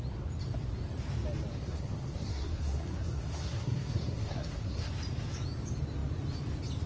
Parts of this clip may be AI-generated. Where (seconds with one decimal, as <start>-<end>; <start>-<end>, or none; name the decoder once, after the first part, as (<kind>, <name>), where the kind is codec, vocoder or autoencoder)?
1.6-4.9 (codec, SNAC)